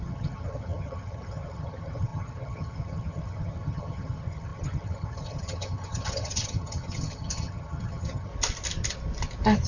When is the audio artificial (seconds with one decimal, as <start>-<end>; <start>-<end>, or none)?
0.0-8.3

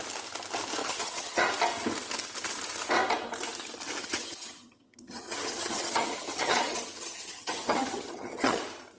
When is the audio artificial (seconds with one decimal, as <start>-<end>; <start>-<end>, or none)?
0.8-1.5; 4.0-8.6

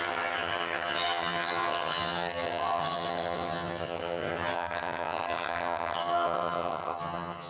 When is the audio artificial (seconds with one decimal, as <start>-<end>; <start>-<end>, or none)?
0.0-7.5

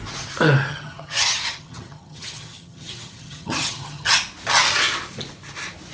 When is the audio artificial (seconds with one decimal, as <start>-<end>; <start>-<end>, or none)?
0.7-4.1

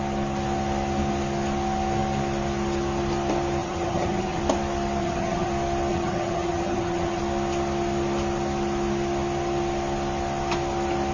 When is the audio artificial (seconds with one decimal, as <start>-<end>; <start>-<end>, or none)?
3.6-4.4; 5.0-5.5; 5.9-7.2

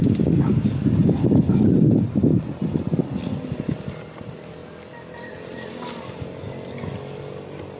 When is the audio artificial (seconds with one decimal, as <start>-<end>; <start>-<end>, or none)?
none

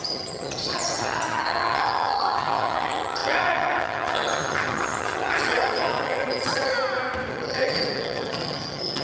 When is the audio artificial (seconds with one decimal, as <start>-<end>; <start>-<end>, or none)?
0.0-6.7; 7.3-9.0